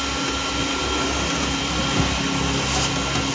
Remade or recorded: recorded